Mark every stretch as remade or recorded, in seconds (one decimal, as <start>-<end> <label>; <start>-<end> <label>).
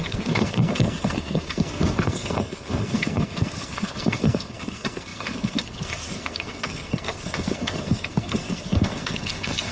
0.0-9.7 remade